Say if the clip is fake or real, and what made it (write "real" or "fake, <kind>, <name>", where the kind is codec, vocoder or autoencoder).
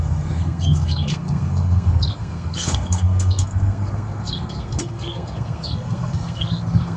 fake, codec, SNAC